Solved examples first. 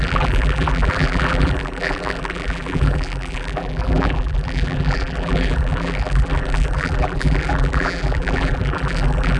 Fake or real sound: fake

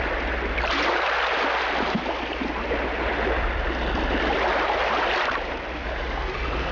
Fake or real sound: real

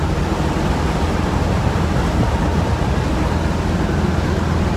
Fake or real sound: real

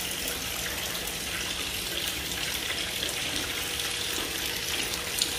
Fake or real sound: real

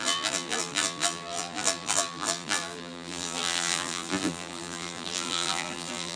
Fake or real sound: fake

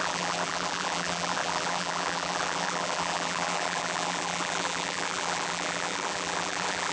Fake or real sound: fake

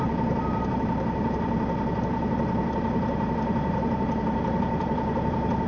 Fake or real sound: fake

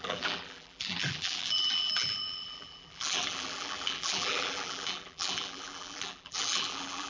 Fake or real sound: fake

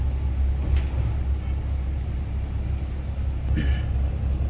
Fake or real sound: real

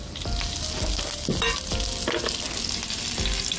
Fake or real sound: real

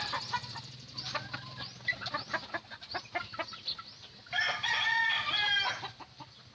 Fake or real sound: real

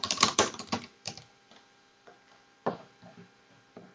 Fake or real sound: fake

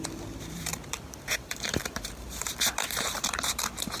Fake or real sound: fake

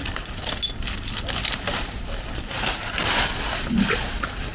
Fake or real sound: real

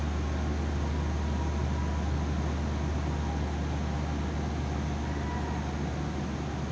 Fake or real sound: real